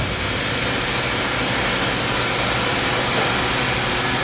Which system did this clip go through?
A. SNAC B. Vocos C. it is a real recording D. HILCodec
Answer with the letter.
C